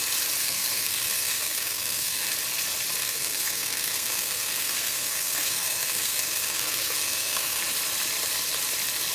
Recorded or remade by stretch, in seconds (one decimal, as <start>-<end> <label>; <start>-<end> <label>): 0.0-0.4 recorded; 0.4-2.3 remade; 2.3-3.0 recorded; 3.0-7.6 remade; 7.6-9.1 recorded